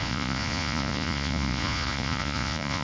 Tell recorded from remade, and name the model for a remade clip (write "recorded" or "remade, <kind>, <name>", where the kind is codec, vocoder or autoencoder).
remade, vocoder, Vocos